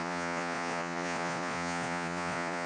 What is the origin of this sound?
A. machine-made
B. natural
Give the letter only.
A